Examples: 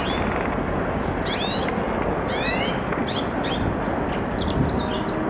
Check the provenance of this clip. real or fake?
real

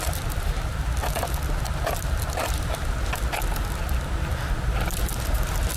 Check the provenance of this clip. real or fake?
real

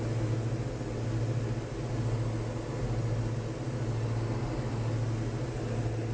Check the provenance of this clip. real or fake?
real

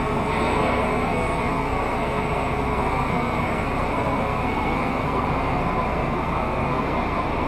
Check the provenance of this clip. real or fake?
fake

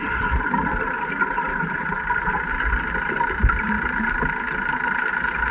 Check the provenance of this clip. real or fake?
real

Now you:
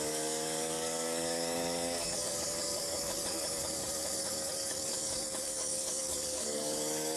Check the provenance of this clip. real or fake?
fake